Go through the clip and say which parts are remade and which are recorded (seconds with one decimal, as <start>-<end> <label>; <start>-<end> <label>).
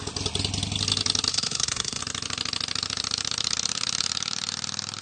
0.0-1.3 recorded; 1.3-2.0 remade; 2.0-5.0 recorded